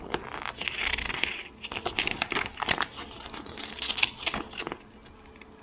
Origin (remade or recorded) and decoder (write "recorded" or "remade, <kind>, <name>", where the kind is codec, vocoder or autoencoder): recorded